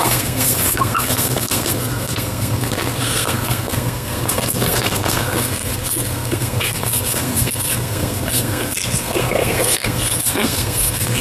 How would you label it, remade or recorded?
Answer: remade